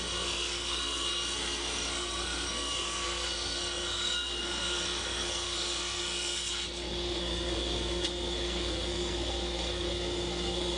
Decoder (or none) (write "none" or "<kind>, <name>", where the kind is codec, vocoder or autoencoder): codec, SNAC